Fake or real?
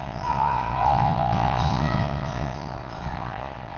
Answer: fake